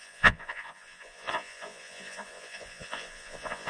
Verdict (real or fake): fake